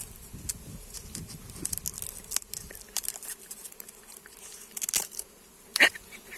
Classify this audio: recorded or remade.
recorded